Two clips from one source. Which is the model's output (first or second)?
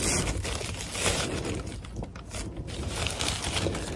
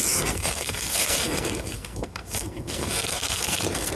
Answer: second